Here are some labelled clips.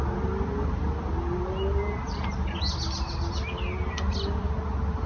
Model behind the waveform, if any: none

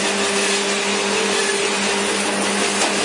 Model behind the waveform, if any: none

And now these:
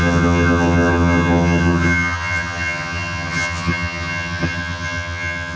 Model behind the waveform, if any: vocoder, HiFi-GAN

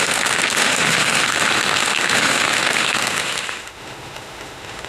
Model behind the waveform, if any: autoencoder, DAC-VAE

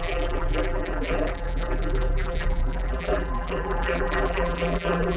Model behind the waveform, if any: vocoder, BigVGAN v2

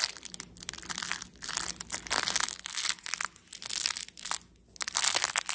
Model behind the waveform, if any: none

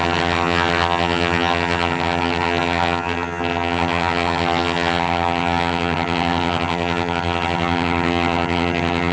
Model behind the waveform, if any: vocoder, HiFi-GAN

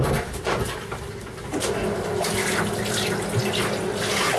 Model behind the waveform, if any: none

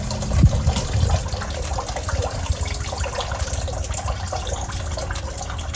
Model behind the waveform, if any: none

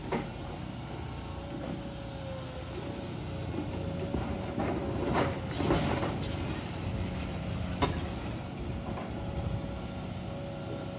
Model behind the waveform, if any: none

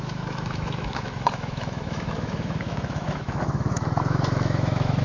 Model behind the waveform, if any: autoencoder, DAC-VAE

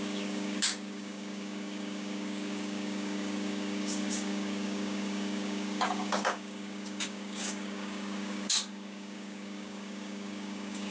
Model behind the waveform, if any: codec, DAC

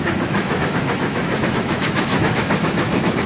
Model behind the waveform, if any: autoencoder, DAC-VAE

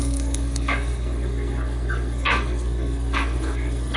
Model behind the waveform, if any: codec, SNAC